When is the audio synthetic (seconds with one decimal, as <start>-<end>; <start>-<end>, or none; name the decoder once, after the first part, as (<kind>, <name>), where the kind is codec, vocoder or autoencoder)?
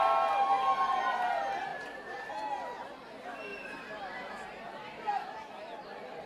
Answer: 1.7-2.3 (vocoder, BigVGAN v2); 3.5-5.1